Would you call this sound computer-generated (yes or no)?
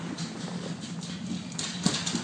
no